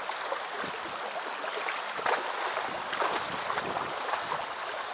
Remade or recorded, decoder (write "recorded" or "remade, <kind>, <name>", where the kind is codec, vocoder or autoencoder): recorded